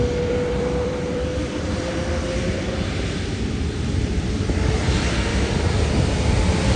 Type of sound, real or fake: fake